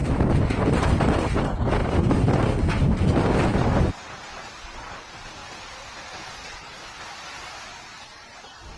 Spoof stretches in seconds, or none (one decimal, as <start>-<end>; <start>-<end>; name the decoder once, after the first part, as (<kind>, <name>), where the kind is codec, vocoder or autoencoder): 0.0-1.4 (vocoder, BigVGAN v2)